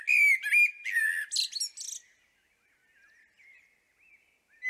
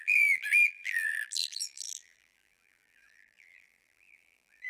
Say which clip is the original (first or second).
first